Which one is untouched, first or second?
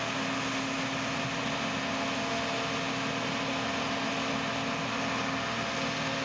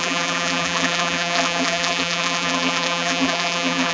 first